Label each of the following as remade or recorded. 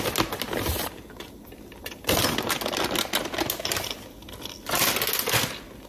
recorded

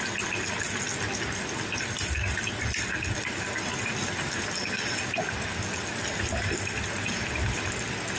recorded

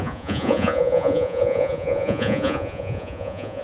remade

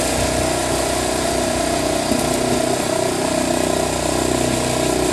recorded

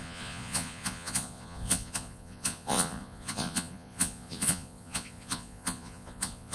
remade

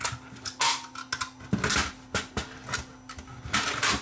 recorded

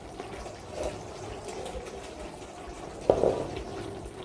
recorded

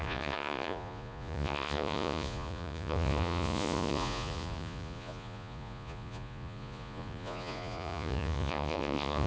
remade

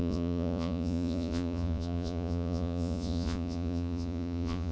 remade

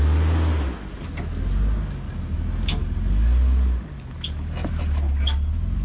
recorded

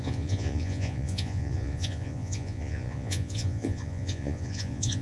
remade